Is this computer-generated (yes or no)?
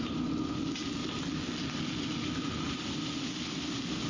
no